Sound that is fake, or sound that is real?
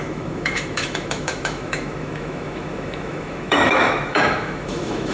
fake